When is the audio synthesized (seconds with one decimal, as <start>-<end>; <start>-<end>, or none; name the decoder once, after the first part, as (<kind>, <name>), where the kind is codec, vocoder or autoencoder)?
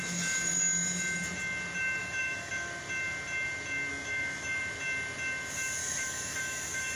2.0-2.5 (autoencoder, DAC-VAE); 3.9-4.6; 5.8-7.0